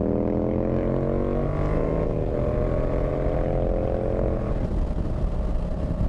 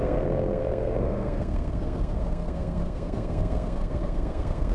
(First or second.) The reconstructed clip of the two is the second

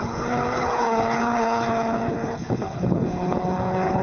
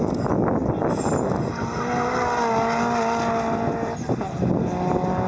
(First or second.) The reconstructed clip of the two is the first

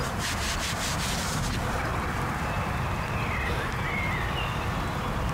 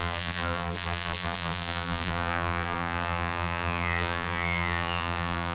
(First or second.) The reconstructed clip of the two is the second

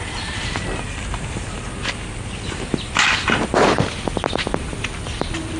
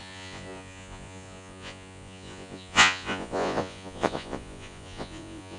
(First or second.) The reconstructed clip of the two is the second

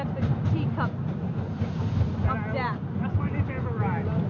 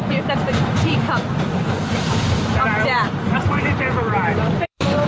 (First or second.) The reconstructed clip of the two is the second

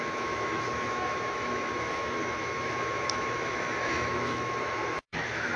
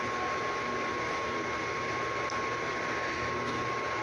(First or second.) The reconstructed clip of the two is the first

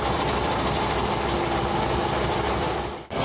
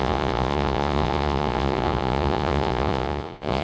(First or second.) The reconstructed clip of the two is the second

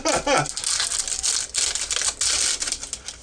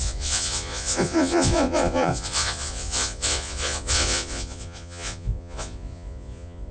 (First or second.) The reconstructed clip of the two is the second